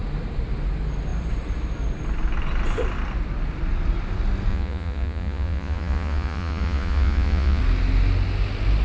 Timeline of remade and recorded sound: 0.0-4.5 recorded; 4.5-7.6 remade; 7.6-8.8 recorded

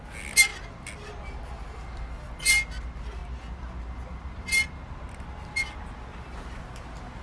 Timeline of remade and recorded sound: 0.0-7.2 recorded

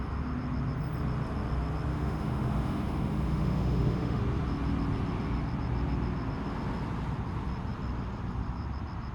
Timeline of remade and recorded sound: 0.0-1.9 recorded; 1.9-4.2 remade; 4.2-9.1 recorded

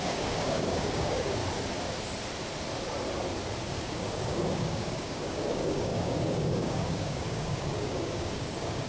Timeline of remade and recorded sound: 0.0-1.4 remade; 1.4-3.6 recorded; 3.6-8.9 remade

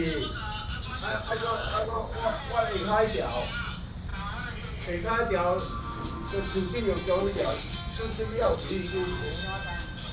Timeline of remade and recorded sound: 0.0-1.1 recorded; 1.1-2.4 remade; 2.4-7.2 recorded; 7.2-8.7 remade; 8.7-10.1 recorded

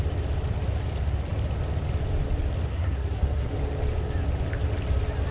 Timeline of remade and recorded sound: 0.0-2.7 recorded; 2.7-3.5 remade; 3.5-5.3 recorded